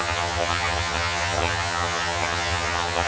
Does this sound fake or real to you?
fake